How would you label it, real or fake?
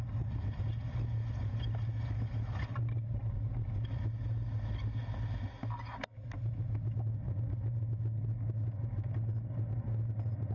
real